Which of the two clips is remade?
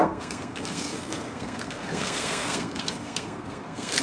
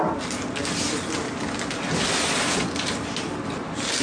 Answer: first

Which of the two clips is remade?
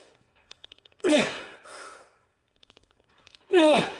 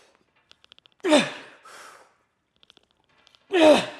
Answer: first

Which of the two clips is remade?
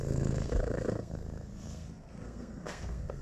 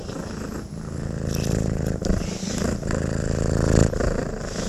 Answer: first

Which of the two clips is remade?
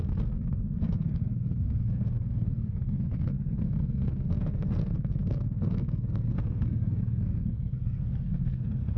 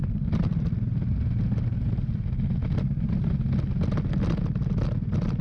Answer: first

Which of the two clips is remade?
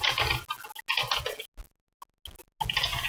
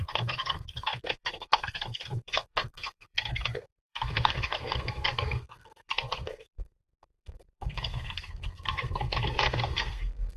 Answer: second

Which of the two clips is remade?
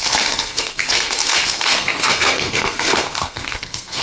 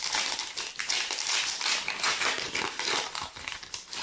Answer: first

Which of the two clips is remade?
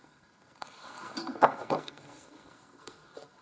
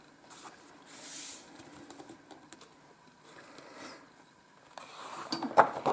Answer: first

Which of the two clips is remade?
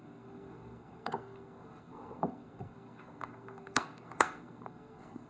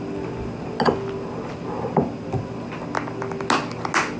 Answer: first